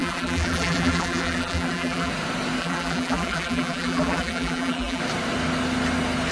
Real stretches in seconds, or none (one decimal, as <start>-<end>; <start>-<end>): 2.1-2.6; 5.0-6.3